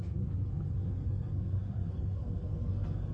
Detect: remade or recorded remade